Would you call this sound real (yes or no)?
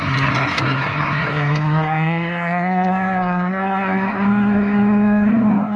no